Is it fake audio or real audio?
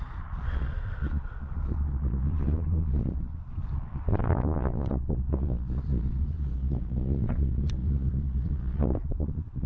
fake